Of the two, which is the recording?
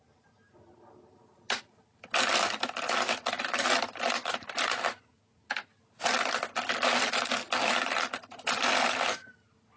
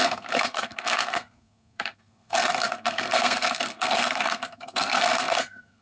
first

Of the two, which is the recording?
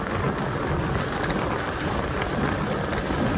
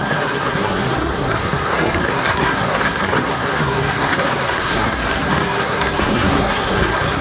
first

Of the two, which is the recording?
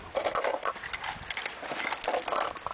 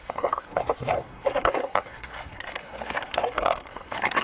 first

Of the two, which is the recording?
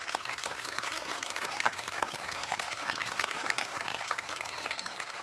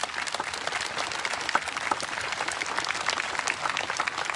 second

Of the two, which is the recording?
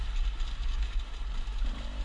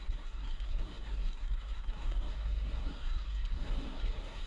first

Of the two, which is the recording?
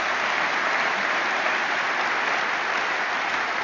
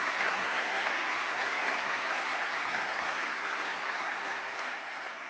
first